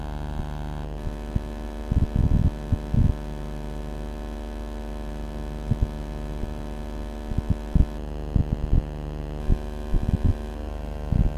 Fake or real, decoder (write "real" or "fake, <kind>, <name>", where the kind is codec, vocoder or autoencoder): real